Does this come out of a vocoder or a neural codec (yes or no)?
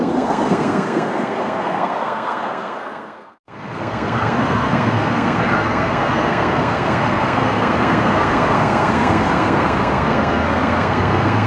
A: yes